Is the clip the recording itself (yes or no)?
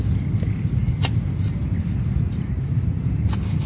yes